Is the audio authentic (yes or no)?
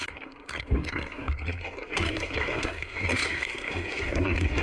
no